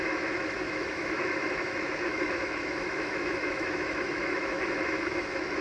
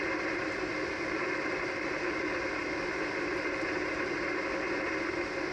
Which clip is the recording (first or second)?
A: second